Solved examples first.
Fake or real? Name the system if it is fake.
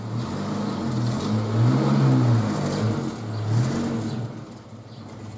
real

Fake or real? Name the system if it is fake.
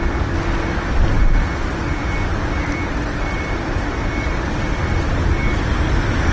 real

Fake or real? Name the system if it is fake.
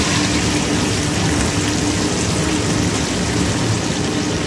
real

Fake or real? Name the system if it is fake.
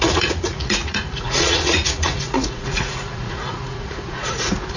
fake, vocoder, Vocos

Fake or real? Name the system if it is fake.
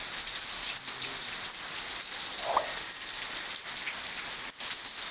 real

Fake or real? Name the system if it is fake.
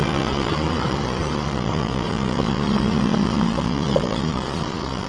fake, vocoder, Vocos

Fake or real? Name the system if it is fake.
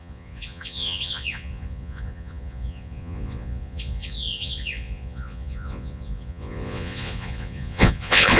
fake, vocoder, Vocos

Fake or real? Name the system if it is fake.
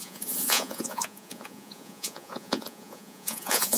fake, vocoder, Vocos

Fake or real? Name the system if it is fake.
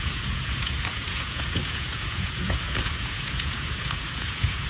fake, vocoder, Vocos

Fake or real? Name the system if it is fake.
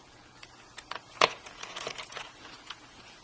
fake, vocoder, Vocos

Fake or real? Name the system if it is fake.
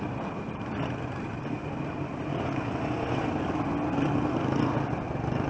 real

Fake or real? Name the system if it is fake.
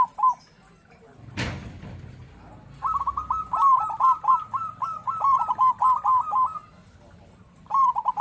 real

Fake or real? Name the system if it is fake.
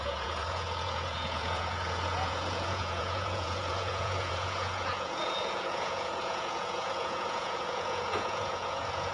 fake, vocoder, Vocos